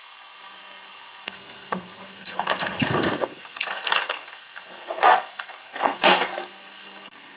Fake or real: fake